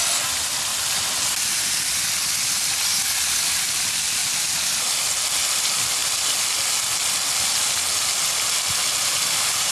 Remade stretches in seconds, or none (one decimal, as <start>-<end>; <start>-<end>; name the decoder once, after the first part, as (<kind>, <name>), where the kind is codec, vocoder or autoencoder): none